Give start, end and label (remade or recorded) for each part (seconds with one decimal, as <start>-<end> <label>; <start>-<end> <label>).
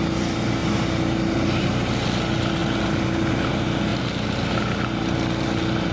0.0-5.9 recorded